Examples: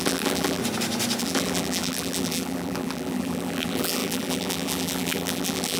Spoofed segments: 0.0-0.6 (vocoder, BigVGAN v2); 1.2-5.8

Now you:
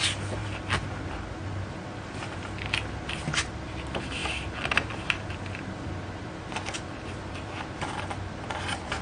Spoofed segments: none